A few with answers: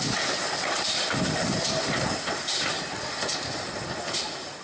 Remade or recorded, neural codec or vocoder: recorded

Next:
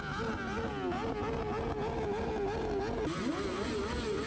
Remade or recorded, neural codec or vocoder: recorded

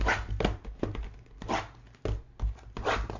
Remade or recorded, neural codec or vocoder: recorded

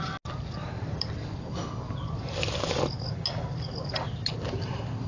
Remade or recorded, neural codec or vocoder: recorded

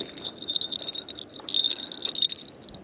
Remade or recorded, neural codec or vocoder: recorded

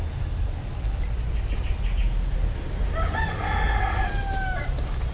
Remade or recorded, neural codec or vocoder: recorded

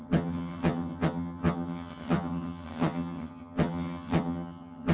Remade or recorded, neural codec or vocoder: remade, vocoder, HiFi-GAN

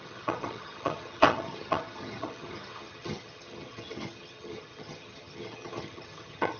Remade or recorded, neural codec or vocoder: remade, vocoder, HiFi-GAN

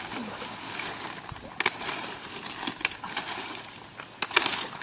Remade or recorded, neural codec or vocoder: recorded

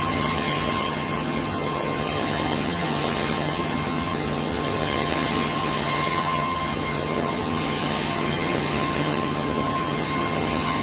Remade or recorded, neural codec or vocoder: remade, vocoder, HiFi-GAN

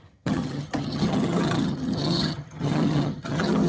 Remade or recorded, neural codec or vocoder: remade, vocoder, HiFi-GAN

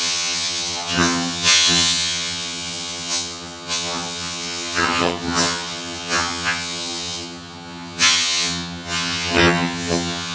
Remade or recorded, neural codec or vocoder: remade, vocoder, HiFi-GAN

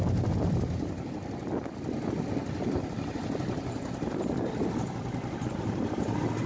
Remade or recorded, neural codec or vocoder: recorded